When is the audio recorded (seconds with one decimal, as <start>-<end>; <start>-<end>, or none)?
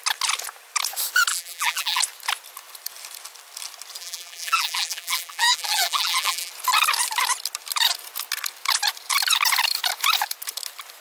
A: 0.0-1.3; 2.0-4.0; 6.5-11.0